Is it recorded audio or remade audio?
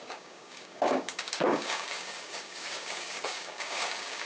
remade